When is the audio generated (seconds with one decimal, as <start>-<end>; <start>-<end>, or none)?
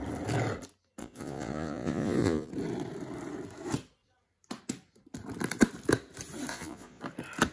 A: 1.0-2.5; 6.5-7.0